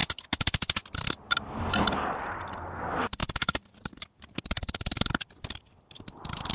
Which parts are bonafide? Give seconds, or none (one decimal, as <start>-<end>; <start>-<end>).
0.0-1.9